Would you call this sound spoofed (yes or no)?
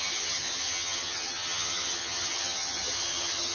yes